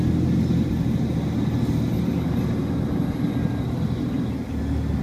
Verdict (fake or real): real